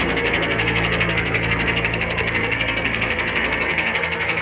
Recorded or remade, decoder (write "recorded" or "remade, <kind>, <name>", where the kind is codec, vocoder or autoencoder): remade, codec, SNAC